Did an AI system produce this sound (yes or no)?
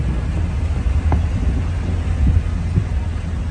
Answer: no